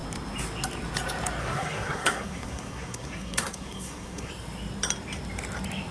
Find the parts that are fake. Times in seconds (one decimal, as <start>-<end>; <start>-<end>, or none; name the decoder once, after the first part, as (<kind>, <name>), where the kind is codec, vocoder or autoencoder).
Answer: 1.4-4.3 (codec, SNAC)